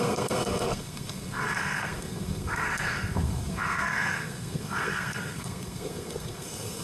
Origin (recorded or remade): remade